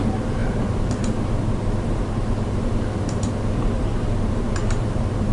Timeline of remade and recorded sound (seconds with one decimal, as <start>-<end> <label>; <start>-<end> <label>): 0.0-5.3 remade